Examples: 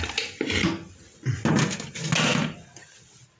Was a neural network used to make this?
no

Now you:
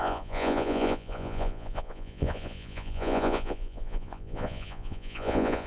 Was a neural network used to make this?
yes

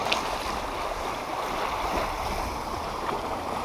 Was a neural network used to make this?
no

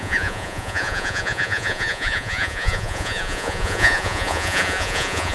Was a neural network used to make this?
yes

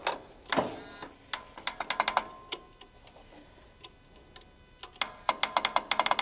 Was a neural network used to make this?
no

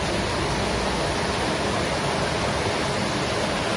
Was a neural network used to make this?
no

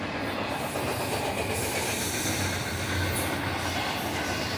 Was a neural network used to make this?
no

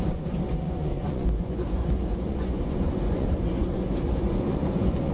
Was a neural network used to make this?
yes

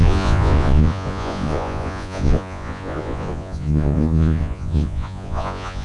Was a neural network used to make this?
yes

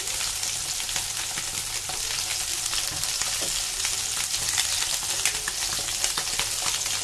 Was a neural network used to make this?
no